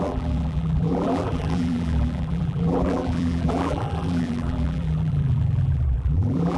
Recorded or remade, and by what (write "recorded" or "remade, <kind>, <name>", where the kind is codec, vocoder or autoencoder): remade, vocoder, BigVGAN v2